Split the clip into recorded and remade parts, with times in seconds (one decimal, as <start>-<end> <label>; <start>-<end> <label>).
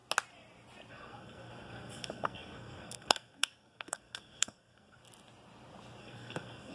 0.0-0.9 recorded; 0.9-5.0 remade; 5.0-6.0 recorded; 6.0-6.7 remade